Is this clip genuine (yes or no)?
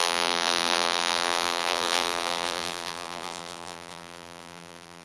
no